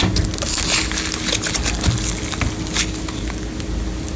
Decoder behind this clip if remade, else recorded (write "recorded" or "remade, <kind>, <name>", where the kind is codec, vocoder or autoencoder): recorded